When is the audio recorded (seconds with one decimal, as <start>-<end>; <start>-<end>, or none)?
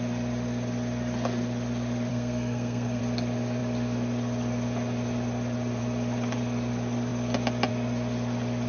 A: 0.0-2.1; 3.0-8.7